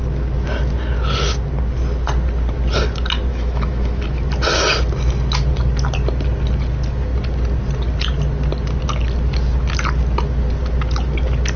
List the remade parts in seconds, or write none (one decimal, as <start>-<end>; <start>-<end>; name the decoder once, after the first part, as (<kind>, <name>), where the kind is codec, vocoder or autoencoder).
3.3-4.2 (autoencoder, DAC-VAE)